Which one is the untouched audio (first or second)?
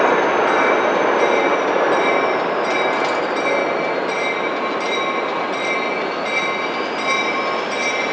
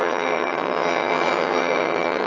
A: first